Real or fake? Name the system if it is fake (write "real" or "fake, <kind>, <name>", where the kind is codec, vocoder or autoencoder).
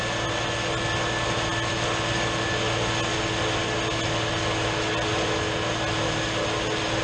real